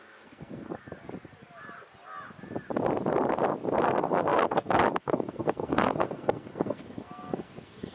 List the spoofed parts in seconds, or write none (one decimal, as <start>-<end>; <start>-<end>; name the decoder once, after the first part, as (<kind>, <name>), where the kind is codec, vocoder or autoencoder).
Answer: 0.0-0.8 (codec, SNAC); 3.8-7.9